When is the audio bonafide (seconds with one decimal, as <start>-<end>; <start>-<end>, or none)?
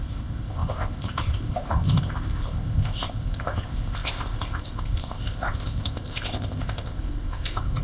none